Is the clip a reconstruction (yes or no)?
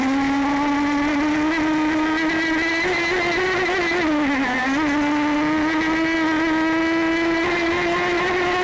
no